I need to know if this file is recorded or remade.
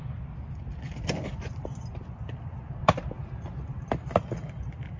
recorded